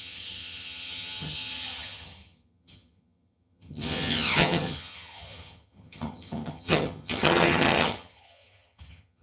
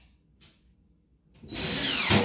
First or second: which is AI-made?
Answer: first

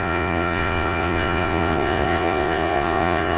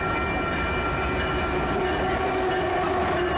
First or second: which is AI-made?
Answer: first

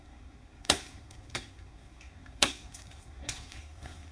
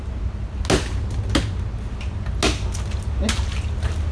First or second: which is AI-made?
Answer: first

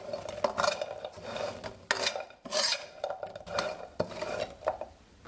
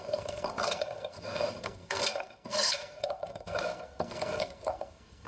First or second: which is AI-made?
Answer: second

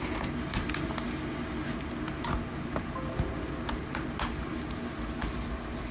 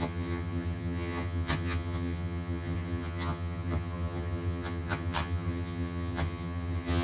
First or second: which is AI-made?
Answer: second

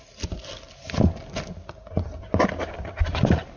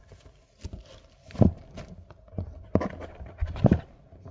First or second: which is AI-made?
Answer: second